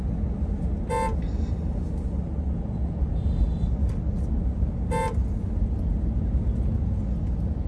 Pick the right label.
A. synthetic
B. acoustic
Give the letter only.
B